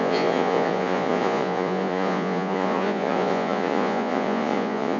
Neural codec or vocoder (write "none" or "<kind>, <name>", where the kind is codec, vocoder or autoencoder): vocoder, Vocos